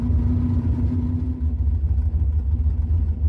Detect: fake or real real